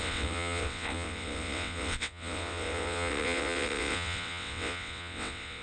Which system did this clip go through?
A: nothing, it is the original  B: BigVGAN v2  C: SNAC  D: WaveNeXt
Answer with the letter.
D